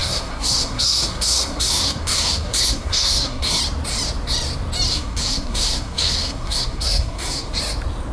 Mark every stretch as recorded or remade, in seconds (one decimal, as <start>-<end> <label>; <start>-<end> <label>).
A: 0.0-3.6 remade; 3.6-4.9 recorded; 4.9-7.5 remade; 7.5-8.1 recorded